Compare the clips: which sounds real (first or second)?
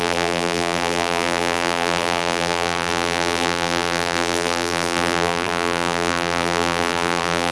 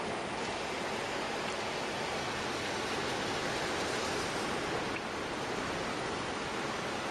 second